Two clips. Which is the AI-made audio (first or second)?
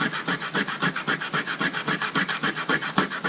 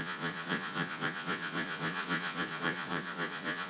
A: second